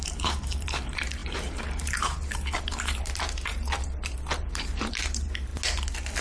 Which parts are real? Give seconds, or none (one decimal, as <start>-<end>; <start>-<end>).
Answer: 5.5-6.2

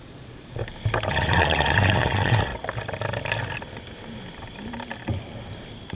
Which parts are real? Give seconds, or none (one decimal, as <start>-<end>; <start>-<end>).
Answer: 0.6-1.1; 2.5-5.9